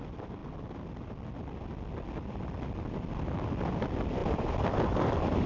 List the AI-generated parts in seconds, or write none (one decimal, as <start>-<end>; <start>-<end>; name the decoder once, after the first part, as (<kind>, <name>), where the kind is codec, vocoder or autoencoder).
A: 4.2-5.5 (vocoder, BigVGAN v2)